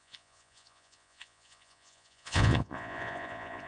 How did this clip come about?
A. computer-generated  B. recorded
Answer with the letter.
A